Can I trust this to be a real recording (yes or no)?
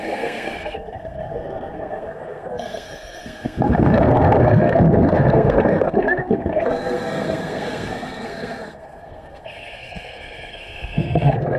no